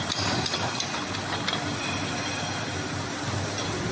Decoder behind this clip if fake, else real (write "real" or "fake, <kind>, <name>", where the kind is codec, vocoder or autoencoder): real